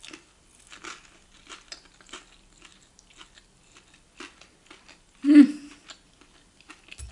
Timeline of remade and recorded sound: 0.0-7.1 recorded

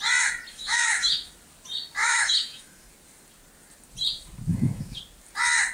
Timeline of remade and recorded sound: 0.0-0.5 recorded; 0.5-1.3 remade; 1.3-2.0 recorded; 2.0-2.9 remade; 2.9-4.5 recorded; 4.5-5.0 remade; 5.0-5.7 recorded

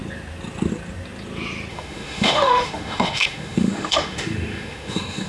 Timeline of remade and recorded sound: 0.0-1.7 recorded; 1.7-5.3 remade

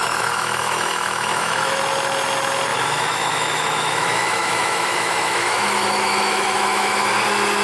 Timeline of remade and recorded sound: 0.0-1.8 remade; 1.8-2.7 recorded; 2.7-7.1 remade; 7.1-7.6 recorded

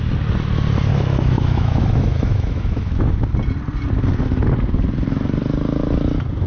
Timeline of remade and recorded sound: 0.0-0.9 recorded; 0.9-3.1 remade; 3.1-6.5 recorded

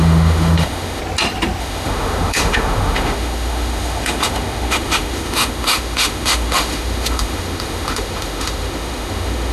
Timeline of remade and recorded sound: 0.0-1.0 remade; 1.0-1.6 recorded; 1.6-9.5 remade